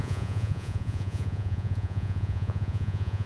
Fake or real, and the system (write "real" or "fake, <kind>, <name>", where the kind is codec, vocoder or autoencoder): fake, vocoder, Vocos